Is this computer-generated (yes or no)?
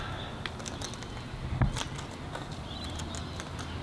no